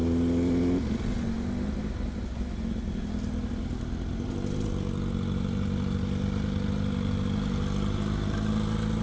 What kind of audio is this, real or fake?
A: real